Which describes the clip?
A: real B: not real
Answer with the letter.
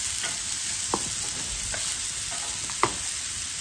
A